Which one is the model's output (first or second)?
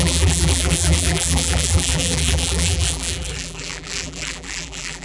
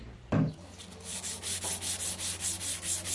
first